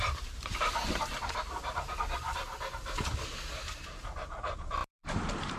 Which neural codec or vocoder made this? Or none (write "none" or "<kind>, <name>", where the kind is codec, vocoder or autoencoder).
vocoder, BigVGAN v2